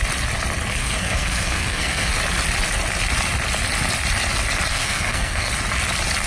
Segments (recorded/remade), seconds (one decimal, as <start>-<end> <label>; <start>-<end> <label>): 0.0-0.8 recorded; 0.8-2.1 remade; 2.1-4.7 recorded; 4.7-5.5 remade; 5.5-6.3 recorded